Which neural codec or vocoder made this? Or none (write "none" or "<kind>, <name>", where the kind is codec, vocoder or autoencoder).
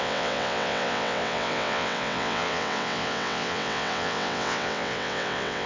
vocoder, WaveNeXt